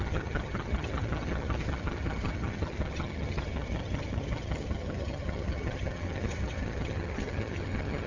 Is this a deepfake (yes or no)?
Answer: yes